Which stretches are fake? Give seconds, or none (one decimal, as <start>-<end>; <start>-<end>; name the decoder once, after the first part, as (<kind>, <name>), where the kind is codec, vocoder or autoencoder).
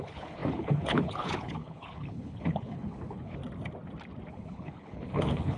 0.0-3.4 (codec, HILCodec); 4.3-5.6